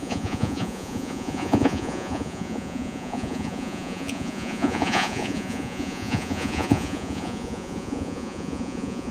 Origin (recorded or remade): remade